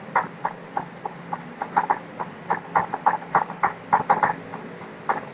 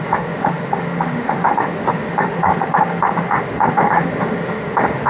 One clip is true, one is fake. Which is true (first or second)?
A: first